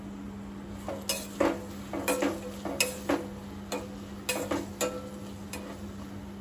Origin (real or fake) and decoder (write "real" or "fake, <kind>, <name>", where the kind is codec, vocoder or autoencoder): real